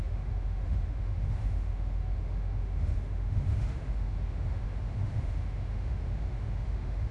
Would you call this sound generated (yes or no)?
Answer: yes